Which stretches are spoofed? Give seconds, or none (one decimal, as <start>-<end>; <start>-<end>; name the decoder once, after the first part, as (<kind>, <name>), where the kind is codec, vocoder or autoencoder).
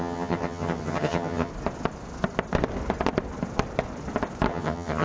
0.0-1.5 (vocoder, HiFi-GAN); 4.5-5.0